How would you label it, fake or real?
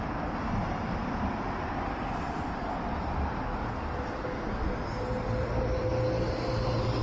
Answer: real